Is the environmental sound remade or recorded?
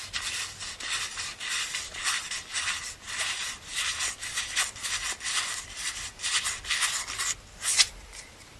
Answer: recorded